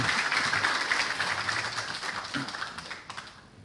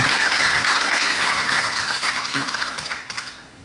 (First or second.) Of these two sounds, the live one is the first